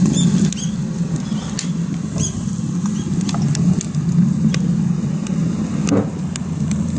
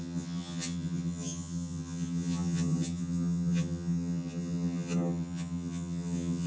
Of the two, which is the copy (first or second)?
second